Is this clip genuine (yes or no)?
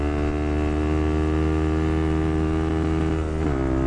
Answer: yes